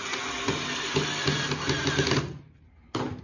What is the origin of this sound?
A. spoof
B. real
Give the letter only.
B